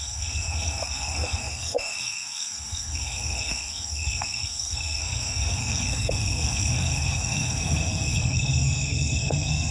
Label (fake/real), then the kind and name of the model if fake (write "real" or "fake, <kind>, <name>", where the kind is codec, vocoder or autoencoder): fake, codec, SNAC